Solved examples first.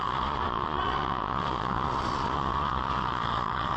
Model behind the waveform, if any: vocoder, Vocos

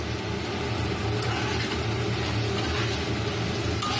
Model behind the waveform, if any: none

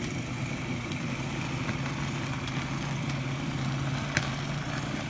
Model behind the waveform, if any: none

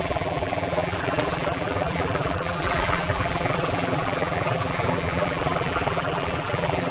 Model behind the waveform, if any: vocoder, BigVGAN v2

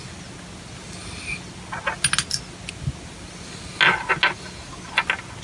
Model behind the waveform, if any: none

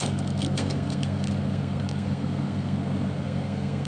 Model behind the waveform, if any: codec, SNAC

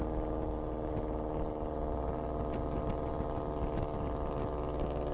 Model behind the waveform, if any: none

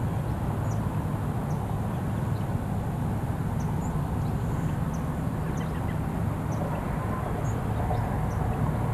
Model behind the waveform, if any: none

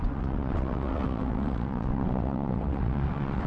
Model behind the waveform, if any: vocoder, WaveNeXt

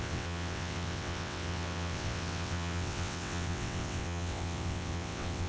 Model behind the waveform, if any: vocoder, WaveNeXt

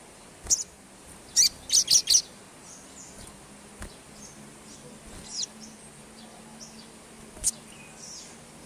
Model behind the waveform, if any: none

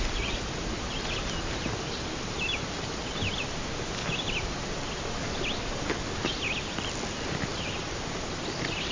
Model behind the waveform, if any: none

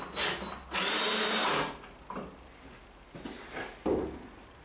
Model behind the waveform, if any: none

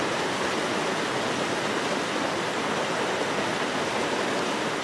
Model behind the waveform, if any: none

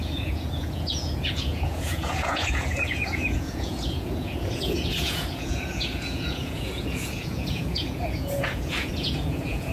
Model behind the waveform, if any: vocoder, Vocos